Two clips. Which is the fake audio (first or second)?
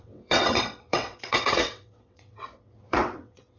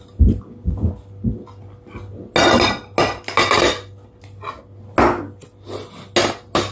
first